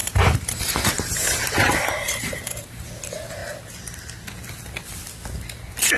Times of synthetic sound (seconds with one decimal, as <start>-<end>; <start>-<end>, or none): 0.0-2.9

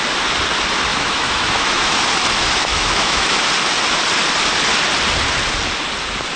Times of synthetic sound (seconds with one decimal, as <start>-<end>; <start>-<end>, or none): 0.9-2.0; 2.7-3.5

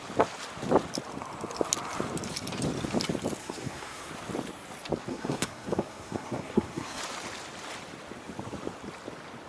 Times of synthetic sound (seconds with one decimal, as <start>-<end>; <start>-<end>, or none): 3.4-4.1; 5.1-7.0

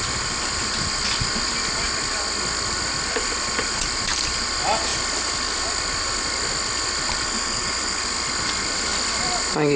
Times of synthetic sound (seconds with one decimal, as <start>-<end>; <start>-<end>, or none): none